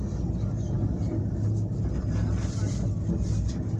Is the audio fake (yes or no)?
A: no